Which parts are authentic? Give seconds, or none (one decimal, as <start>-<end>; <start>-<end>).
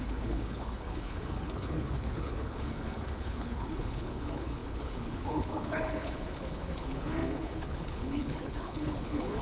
none